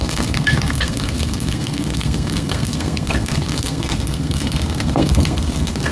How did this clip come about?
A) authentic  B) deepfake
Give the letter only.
B